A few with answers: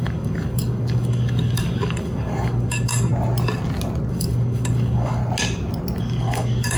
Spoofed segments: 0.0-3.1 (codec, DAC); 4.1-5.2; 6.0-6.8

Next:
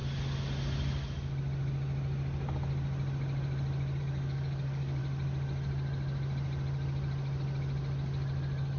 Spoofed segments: 4.0-5.0 (codec, DAC)